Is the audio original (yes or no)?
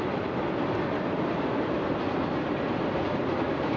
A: yes